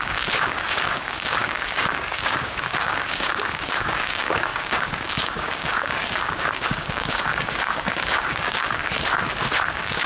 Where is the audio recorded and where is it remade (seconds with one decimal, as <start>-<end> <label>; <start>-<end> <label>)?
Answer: 0.0-8.8 remade; 8.8-9.7 recorded; 9.7-10.1 remade